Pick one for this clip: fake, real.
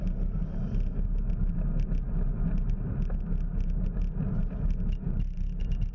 real